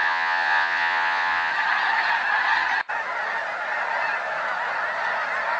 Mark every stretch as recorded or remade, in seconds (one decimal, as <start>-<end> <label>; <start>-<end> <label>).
0.0-1.5 remade; 1.5-5.6 recorded